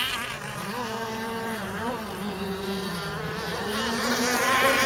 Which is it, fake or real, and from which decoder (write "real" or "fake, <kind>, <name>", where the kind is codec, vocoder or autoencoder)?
fake, vocoder, BigVGAN v2